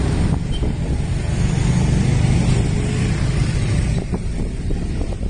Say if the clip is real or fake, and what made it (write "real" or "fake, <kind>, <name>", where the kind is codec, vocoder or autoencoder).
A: real